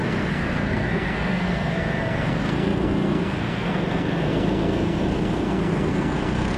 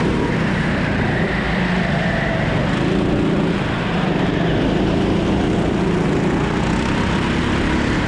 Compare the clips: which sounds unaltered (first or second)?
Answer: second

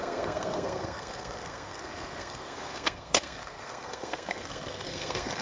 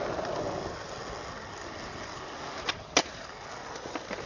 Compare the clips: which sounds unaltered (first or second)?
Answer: second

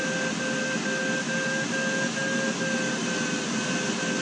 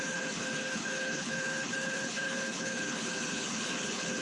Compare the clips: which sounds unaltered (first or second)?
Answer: first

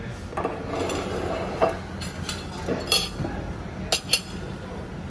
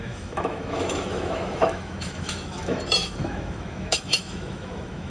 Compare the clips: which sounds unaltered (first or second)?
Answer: first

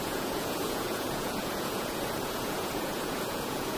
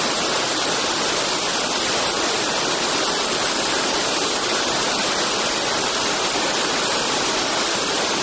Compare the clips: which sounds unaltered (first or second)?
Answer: second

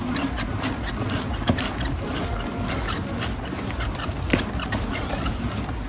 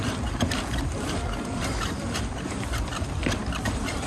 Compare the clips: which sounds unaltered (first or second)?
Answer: first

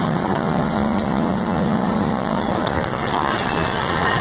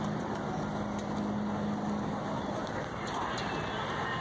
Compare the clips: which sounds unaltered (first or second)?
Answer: second